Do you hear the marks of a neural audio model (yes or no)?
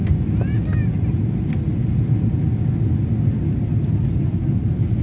no